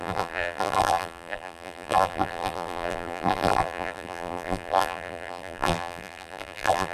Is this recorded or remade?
remade